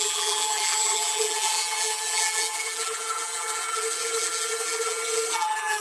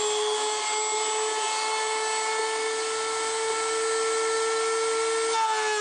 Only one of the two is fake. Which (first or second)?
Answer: first